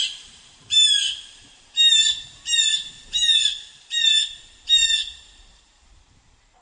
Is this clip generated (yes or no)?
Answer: yes